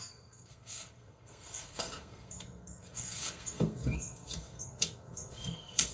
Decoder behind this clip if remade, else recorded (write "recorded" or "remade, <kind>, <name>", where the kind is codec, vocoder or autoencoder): remade, codec, SNAC